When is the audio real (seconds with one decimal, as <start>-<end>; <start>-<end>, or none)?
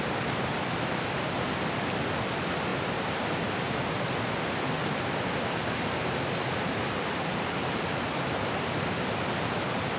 0.0-10.0